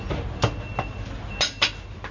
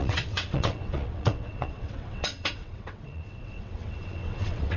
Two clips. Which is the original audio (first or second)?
first